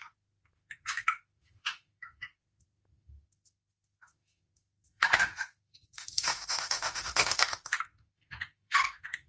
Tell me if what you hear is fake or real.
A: fake